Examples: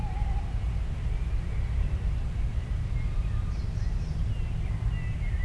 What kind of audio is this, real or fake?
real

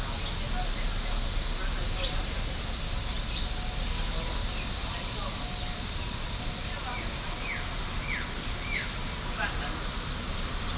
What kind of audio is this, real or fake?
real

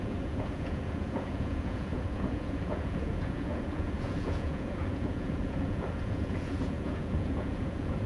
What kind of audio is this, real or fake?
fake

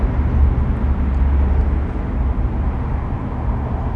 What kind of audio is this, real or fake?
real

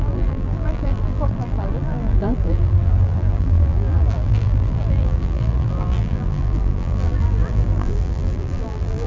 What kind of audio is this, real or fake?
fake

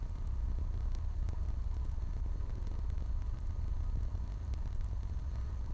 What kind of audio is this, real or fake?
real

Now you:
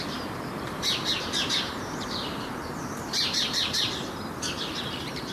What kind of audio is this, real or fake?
fake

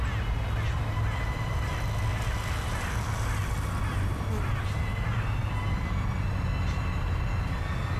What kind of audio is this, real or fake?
real